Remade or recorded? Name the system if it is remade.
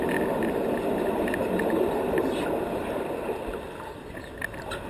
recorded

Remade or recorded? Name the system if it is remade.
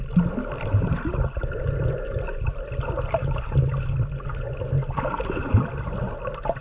recorded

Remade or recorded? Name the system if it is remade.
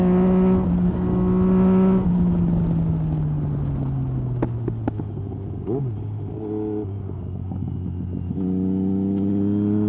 recorded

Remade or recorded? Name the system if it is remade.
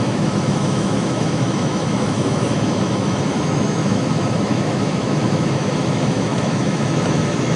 remade, autoencoder, DAC-VAE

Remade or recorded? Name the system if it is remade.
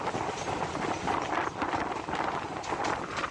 recorded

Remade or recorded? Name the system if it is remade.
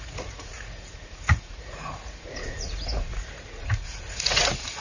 remade, vocoder, Vocos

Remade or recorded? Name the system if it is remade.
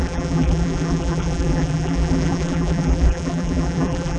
remade, vocoder, BigVGAN v2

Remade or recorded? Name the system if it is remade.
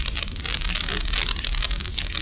recorded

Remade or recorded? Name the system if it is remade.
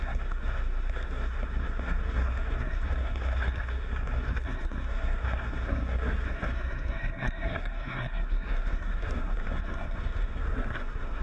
remade, codec, SNAC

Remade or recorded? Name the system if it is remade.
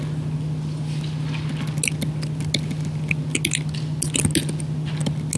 recorded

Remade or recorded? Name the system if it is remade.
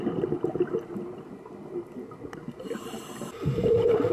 recorded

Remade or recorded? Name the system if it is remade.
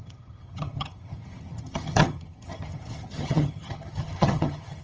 remade, vocoder, HiFi-GAN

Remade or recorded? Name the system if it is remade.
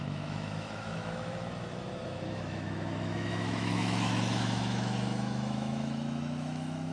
remade, autoencoder, DAC-VAE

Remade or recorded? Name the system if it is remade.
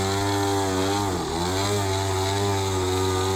recorded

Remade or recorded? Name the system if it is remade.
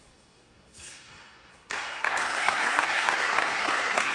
remade, codec, SNAC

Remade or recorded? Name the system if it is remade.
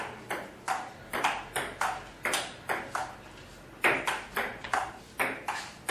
recorded